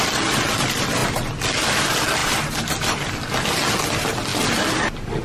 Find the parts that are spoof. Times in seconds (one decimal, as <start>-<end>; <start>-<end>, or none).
none